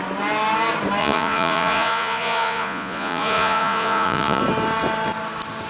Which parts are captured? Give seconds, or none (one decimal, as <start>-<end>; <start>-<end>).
0.0-1.0; 4.4-5.7